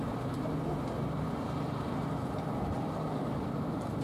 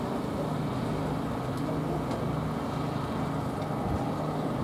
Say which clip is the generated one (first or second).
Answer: first